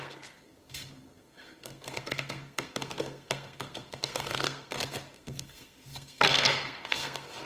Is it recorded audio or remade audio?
remade